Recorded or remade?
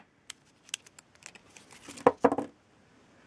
recorded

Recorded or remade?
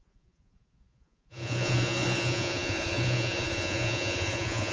remade